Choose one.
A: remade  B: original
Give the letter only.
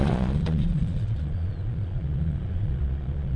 A